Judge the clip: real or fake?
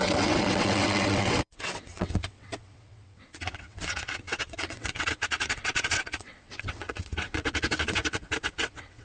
fake